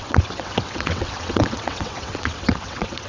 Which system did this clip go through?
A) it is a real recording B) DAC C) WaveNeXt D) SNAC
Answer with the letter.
C